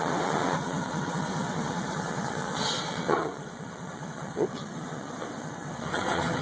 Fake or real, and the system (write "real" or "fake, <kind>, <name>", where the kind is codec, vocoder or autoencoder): fake, vocoder, WaveNeXt